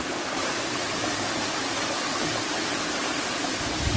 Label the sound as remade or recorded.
recorded